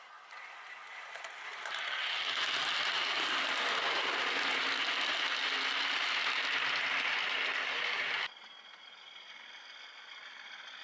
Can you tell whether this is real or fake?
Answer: real